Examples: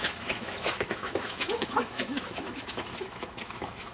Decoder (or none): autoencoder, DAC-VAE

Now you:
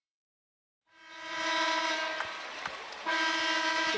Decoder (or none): vocoder, BigVGAN v2